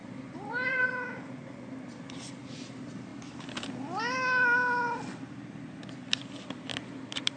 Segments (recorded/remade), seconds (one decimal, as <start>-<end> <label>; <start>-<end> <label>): 0.0-0.9 remade; 0.9-7.4 recorded